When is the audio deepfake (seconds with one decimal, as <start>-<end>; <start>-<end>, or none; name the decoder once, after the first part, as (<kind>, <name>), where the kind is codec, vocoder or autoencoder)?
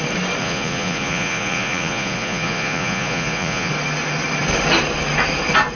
0.4-3.7 (vocoder, Vocos)